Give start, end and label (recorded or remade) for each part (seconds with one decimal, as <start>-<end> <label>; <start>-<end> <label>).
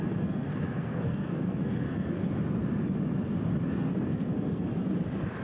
0.0-2.2 remade; 2.2-3.9 recorded; 3.9-4.7 remade; 4.7-5.4 recorded